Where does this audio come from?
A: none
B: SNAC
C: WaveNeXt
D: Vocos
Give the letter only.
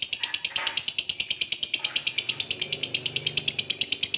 A